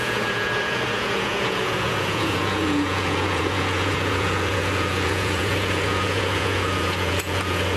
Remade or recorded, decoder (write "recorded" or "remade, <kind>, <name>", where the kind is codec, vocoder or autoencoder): remade, vocoder, Vocos